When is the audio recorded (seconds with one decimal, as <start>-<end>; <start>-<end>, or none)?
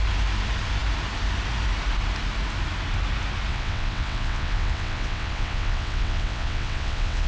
0.0-3.5